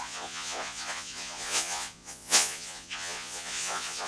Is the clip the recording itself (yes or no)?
no